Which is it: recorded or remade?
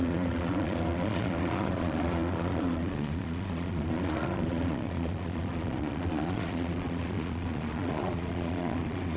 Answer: remade